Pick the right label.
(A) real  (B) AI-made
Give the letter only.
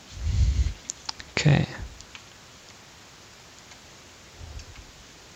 A